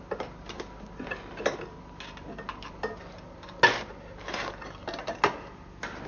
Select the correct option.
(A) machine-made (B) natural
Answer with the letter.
B